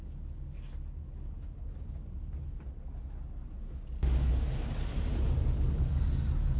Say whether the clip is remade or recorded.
recorded